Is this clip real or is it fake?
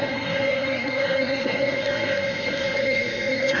fake